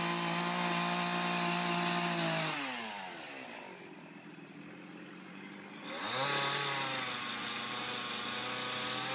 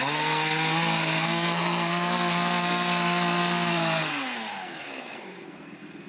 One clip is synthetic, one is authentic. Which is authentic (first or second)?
first